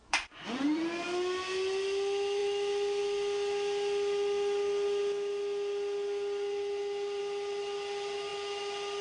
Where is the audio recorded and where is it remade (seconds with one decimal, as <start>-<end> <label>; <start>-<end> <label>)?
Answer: 0.0-0.8 remade; 0.8-9.0 recorded